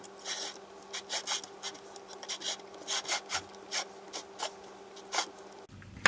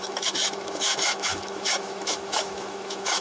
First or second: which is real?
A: first